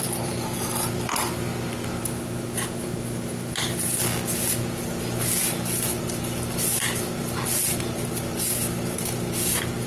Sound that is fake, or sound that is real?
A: real